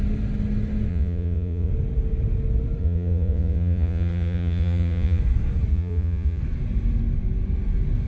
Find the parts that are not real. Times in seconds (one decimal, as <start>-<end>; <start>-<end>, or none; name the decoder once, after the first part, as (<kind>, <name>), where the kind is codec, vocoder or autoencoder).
0.9-1.7 (vocoder, Vocos); 2.8-5.2; 5.7-6.4